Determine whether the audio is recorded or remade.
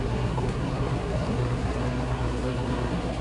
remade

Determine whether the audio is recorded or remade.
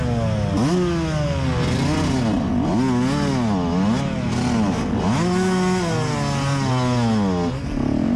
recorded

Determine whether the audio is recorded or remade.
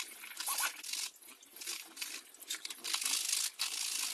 recorded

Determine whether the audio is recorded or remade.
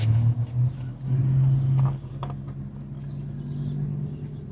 recorded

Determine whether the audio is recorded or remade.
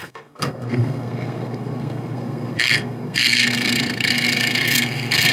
remade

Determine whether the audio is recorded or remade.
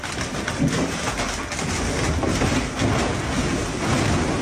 recorded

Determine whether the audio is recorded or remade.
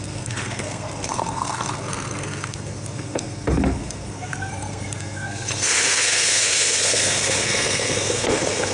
remade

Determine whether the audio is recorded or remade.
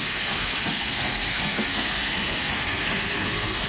remade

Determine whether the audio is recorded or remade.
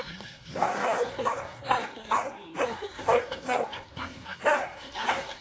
remade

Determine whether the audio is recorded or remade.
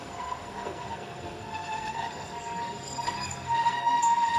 remade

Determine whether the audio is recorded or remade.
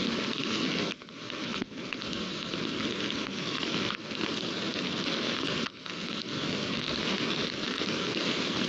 remade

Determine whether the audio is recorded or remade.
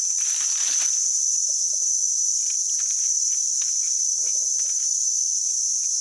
recorded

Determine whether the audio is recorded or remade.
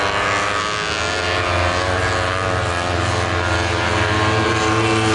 recorded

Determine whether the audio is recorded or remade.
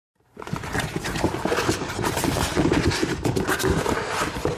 recorded